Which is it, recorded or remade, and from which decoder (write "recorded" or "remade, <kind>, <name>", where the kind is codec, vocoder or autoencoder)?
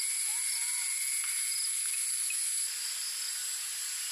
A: recorded